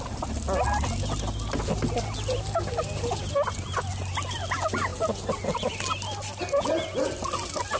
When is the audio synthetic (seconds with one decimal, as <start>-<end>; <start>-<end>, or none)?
none